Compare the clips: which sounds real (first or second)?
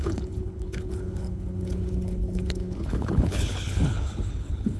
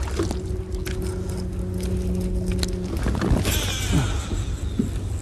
second